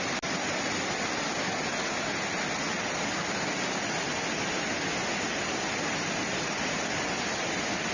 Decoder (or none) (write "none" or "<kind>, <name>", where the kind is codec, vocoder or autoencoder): none